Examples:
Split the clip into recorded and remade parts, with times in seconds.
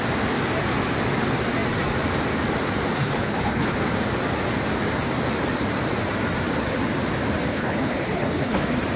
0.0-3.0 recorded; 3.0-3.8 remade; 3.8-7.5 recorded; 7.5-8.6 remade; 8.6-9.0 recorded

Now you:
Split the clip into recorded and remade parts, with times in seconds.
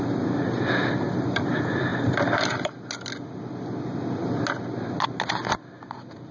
0.0-6.3 recorded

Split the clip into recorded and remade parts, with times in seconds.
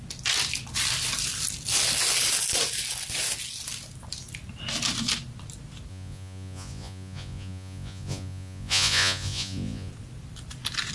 0.0-5.9 recorded; 5.9-9.9 remade; 9.9-10.9 recorded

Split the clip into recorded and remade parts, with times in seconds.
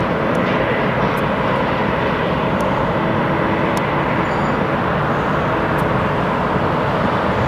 0.0-4.4 remade; 4.4-5.3 recorded; 5.3-7.5 remade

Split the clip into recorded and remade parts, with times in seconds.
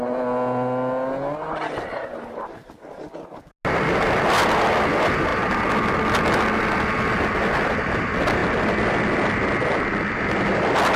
0.0-11.0 recorded